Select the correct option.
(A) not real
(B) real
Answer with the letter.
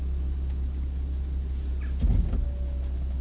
B